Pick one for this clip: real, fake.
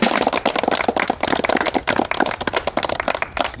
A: real